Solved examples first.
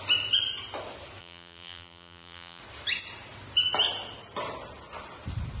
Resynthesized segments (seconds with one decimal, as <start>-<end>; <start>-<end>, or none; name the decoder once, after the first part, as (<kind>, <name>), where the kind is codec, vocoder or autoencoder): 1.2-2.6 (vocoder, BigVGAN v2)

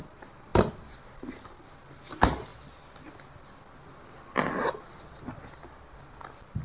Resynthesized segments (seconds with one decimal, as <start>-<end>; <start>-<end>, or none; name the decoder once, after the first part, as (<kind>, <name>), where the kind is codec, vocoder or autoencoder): 0.5-1.7 (vocoder, BigVGAN v2)

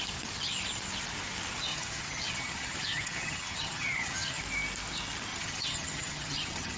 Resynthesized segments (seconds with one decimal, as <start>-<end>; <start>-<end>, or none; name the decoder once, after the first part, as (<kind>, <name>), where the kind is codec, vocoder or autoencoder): 1.7-4.4 (vocoder, HiFi-GAN); 5.3-6.8

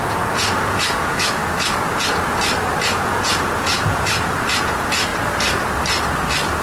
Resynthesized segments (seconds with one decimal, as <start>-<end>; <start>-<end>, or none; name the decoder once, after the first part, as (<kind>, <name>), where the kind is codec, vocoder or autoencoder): 0.0-1.4 (vocoder, Vocos); 2.9-5.1